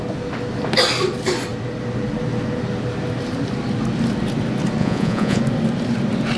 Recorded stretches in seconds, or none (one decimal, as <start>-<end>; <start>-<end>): 0.0-4.8; 5.4-6.4